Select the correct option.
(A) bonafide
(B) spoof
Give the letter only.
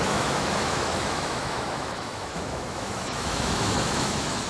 B